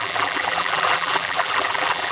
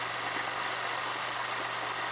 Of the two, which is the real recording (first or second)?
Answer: second